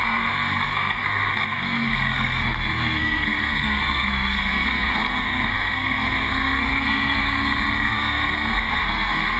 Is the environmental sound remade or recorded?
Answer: remade